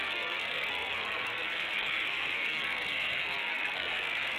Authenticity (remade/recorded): remade